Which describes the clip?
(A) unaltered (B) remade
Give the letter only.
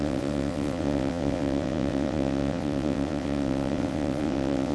B